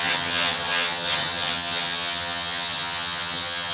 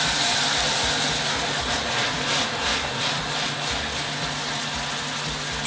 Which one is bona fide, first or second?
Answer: second